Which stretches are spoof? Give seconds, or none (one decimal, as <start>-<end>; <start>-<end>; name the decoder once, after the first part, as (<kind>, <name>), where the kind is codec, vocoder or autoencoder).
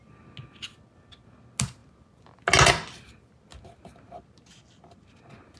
none